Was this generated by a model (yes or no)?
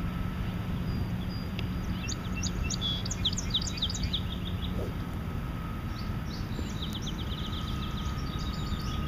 no